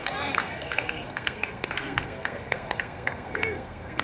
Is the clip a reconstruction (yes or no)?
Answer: yes